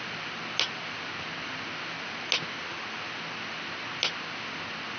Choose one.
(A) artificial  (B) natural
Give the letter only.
B